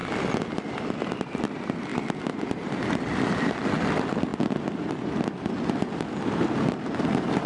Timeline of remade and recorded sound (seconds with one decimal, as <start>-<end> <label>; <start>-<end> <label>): 0.0-7.5 remade